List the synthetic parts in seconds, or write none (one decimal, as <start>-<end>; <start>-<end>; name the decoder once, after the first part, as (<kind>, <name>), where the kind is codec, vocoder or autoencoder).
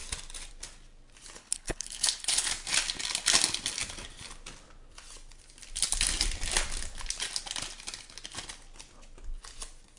1.4-2.5 (codec, HILCodec)